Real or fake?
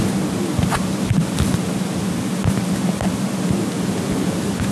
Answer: real